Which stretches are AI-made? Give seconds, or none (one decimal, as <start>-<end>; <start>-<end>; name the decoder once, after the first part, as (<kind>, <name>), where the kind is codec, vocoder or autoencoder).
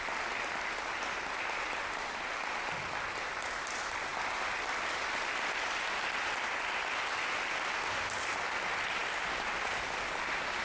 none